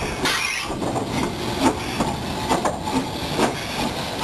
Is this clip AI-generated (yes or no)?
no